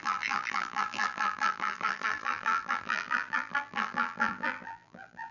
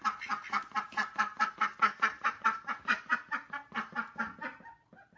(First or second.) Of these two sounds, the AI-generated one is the first